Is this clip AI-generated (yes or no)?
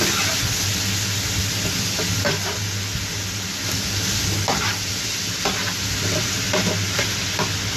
no